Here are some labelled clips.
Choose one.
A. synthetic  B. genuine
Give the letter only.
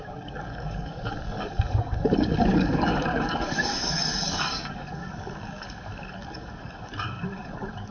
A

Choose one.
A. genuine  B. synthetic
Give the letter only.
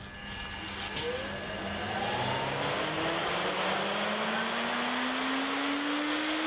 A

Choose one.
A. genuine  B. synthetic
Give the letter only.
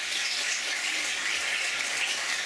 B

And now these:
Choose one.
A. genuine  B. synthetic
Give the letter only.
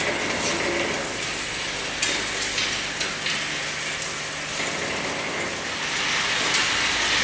A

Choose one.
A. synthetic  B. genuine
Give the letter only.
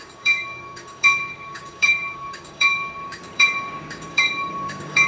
A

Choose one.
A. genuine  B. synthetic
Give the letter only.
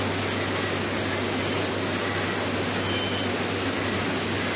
A